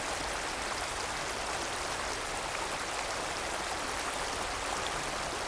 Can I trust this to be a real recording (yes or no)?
yes